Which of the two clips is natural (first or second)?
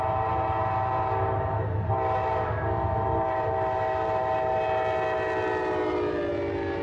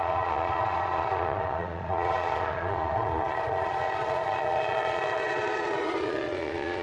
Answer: first